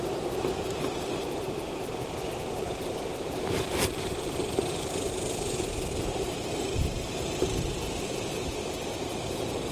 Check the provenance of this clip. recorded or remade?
remade